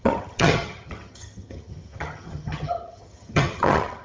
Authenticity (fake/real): fake